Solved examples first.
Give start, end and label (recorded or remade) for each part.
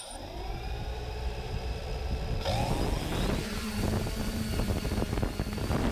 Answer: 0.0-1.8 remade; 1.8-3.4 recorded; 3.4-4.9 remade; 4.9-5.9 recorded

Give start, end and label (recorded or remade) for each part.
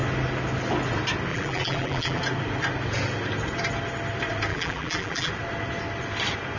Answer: 0.0-1.3 recorded; 1.3-2.2 remade; 2.2-4.5 recorded; 4.5-5.3 remade; 5.3-6.6 recorded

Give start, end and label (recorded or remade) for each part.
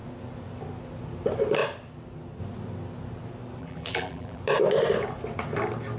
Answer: 0.0-3.6 recorded; 3.6-4.4 remade; 4.4-6.0 recorded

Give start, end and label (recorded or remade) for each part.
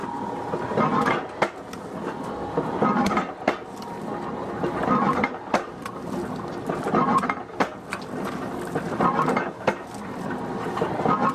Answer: 0.0-11.3 recorded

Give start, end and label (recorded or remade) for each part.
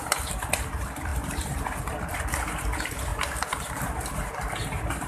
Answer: 0.0-1.1 recorded; 1.1-2.1 remade; 2.1-3.1 recorded; 3.1-3.7 remade; 3.7-5.1 recorded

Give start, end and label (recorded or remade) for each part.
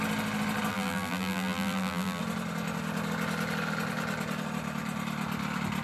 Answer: 0.0-0.7 recorded; 0.7-2.2 remade; 2.2-5.8 recorded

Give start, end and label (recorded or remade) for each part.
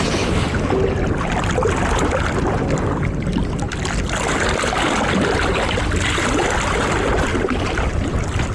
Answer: 0.0-8.5 recorded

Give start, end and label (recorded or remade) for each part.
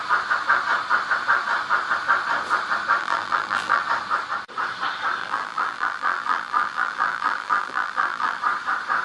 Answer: 0.0-3.0 recorded; 3.0-3.8 remade; 3.8-5.2 recorded; 5.2-8.4 remade; 8.4-9.0 recorded